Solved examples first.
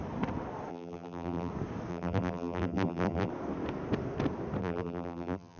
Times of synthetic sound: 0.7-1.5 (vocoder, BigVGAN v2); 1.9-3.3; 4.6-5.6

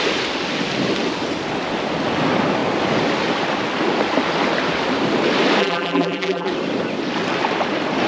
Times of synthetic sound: 5.6-6.5 (vocoder, BigVGAN v2)

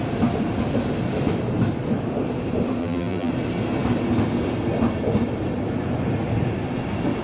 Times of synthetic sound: 2.8-3.3 (vocoder, BigVGAN v2)

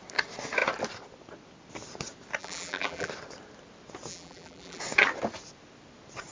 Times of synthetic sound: 2.4-3.1 (vocoder, BigVGAN v2); 4.1-4.8

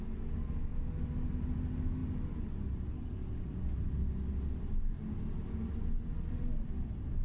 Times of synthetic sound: none

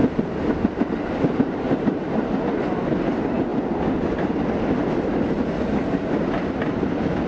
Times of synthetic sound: 0.0-2.4 (vocoder, BigVGAN v2)

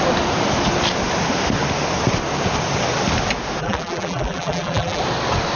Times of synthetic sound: 3.6-5.0 (vocoder, BigVGAN v2)